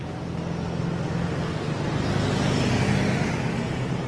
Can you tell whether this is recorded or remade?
recorded